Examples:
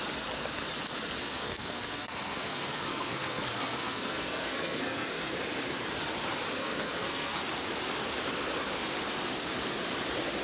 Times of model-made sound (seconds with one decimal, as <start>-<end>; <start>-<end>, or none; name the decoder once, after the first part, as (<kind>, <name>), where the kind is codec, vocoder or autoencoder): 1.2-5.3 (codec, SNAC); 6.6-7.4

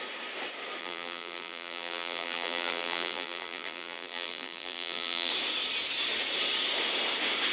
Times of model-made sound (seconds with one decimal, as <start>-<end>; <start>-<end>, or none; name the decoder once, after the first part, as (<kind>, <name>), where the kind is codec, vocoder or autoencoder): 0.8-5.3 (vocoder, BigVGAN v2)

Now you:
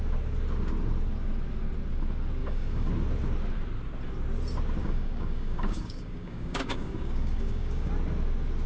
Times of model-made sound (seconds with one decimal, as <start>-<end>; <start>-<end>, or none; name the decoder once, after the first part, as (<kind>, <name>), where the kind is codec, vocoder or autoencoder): 2.4-2.9 (codec, DAC); 4.8-7.9

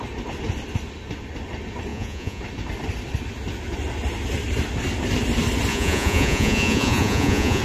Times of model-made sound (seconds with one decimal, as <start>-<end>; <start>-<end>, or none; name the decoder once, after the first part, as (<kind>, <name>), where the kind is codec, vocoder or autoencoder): 1.9-2.4 (vocoder, Vocos); 5.7-7.6

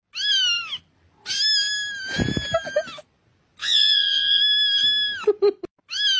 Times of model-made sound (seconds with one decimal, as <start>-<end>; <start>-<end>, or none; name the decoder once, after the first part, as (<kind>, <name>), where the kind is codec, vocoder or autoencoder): 3.6-4.4 (vocoder, Vocos)